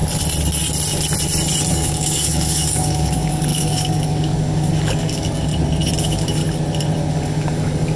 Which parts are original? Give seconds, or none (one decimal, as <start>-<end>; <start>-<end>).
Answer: 0.0-1.7; 5.5-6.0; 6.4-7.1